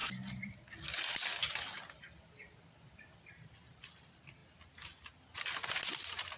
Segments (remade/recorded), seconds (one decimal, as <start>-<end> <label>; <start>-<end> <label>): 0.0-1.3 remade; 1.3-2.9 recorded; 2.9-4.4 remade; 4.4-5.4 recorded; 5.4-6.4 remade